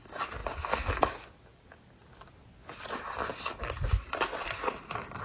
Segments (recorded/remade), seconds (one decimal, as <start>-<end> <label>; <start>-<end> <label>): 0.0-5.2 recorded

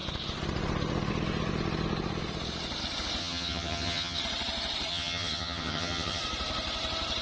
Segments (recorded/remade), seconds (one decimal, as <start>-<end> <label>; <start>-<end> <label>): 0.0-3.2 recorded; 3.2-4.2 remade; 4.2-4.9 recorded; 4.9-6.2 remade; 6.2-7.2 recorded

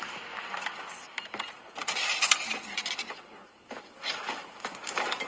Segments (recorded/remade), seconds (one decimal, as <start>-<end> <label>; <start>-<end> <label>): 0.0-5.3 recorded

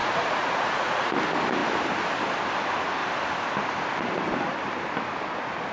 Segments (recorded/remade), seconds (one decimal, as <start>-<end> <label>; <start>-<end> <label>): 0.0-1.1 remade; 1.1-5.7 recorded

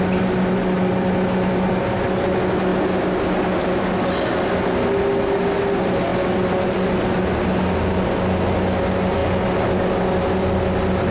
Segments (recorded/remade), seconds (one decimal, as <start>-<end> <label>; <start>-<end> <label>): 0.0-11.1 recorded

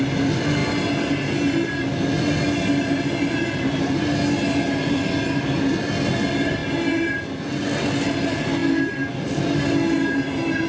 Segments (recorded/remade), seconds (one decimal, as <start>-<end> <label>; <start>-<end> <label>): 0.0-10.7 recorded